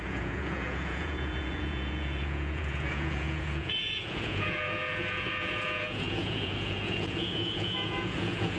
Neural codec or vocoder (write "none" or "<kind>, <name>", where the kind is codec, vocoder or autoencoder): vocoder, Vocos